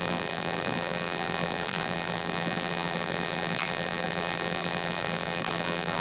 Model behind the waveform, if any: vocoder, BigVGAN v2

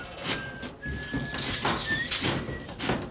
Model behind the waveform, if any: none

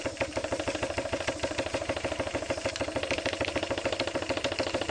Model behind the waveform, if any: vocoder, BigVGAN v2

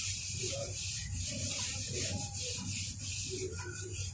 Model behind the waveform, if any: vocoder, BigVGAN v2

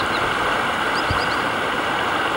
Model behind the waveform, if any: vocoder, BigVGAN v2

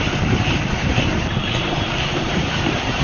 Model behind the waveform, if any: vocoder, BigVGAN v2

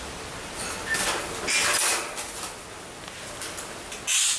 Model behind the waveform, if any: none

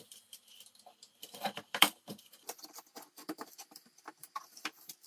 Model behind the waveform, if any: vocoder, BigVGAN v2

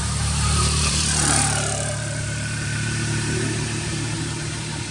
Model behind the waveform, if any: vocoder, BigVGAN v2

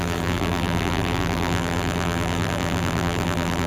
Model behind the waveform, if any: vocoder, BigVGAN v2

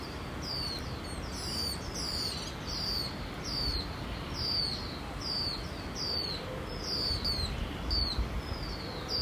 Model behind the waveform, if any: none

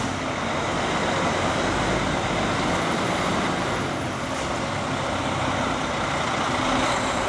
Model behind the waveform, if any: vocoder, BigVGAN v2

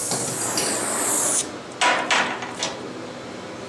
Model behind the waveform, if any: none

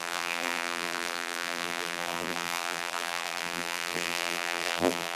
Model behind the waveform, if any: vocoder, BigVGAN v2